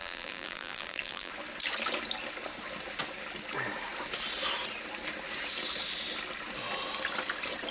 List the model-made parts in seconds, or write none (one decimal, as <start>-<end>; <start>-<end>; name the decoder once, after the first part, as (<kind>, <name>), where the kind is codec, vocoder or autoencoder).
0.0-1.3 (vocoder, BigVGAN v2)